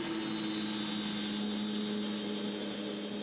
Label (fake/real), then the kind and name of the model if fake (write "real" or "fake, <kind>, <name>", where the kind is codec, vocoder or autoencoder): real